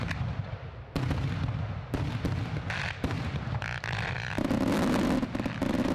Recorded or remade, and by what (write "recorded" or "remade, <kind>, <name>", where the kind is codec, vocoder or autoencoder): recorded